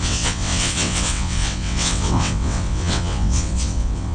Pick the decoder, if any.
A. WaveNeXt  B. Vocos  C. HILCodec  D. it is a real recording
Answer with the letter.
A